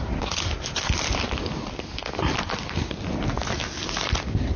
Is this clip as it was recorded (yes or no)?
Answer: yes